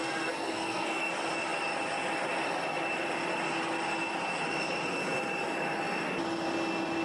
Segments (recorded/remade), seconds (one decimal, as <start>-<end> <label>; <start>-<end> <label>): 0.0-1.1 remade; 1.1-7.0 recorded